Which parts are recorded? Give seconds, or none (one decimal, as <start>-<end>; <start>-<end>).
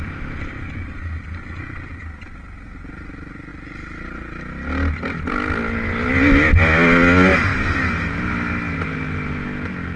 0.0-10.0